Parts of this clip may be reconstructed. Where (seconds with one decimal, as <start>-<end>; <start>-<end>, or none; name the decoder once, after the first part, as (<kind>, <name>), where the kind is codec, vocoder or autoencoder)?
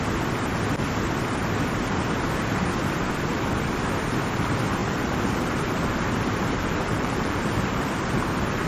4.8-7.9 (vocoder, BigVGAN v2)